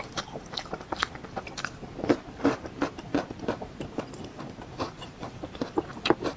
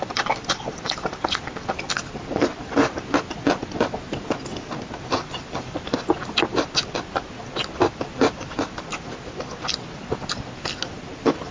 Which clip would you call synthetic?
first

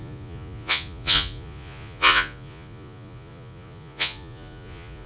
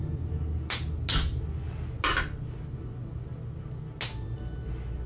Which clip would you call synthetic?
first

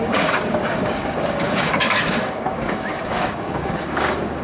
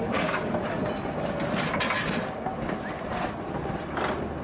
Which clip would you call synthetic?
first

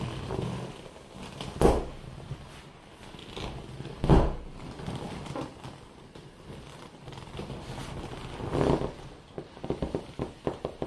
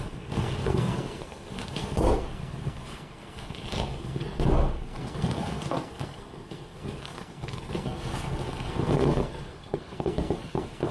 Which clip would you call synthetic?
second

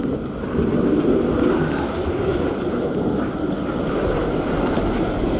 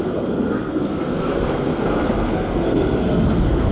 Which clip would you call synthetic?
second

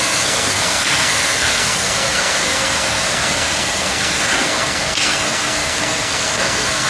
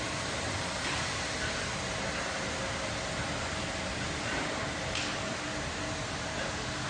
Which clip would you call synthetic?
first